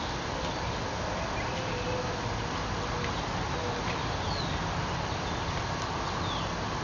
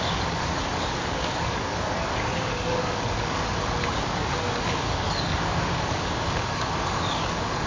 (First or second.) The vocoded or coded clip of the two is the second